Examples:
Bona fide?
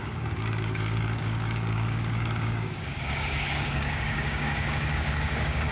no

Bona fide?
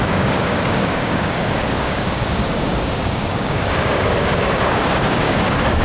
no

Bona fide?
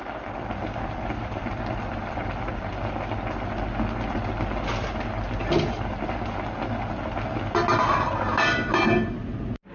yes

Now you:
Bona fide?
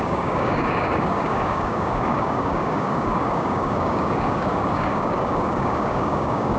no